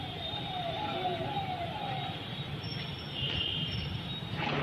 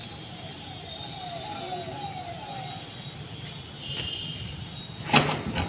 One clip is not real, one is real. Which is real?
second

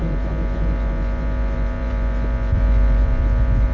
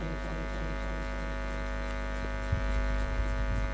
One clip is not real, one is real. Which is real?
second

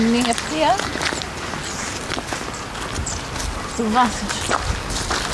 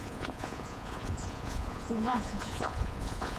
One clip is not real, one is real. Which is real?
first